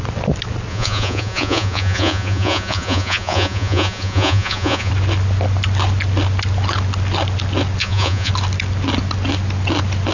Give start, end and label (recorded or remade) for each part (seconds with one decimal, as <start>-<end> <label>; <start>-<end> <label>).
0.0-0.7 recorded; 0.7-4.9 remade; 4.9-7.8 recorded; 7.8-8.3 remade; 8.3-10.1 recorded